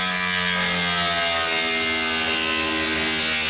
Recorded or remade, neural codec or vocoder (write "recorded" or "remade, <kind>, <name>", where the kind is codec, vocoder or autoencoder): recorded